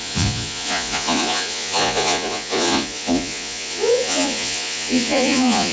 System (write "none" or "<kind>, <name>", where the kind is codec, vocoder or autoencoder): vocoder, Vocos